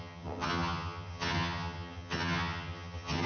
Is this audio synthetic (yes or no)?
yes